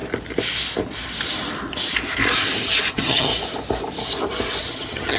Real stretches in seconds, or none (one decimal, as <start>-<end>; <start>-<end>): 0.0-2.9; 3.3-4.6